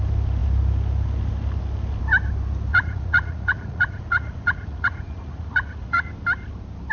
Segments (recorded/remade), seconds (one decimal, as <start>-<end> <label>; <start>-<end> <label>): 0.0-2.7 recorded; 2.7-6.1 remade; 6.1-6.9 recorded